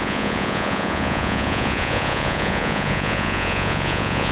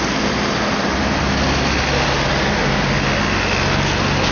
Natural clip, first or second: second